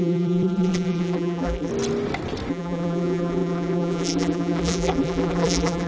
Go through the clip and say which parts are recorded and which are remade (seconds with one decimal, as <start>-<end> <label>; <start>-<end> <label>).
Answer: 0.0-1.7 remade; 1.7-2.5 recorded; 2.5-5.9 remade